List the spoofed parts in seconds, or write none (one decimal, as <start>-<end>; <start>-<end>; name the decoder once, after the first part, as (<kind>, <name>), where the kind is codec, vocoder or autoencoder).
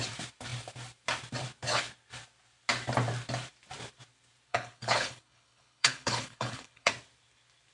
4.5-6.9 (codec, HILCodec)